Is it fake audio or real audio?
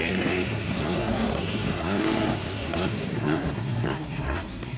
fake